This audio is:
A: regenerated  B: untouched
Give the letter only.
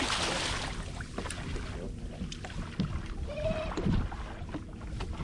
B